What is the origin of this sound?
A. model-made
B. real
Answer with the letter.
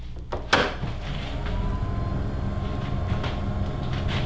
B